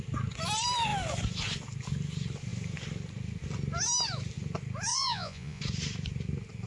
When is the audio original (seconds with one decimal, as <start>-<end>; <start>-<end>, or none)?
0.0-4.9; 5.6-6.7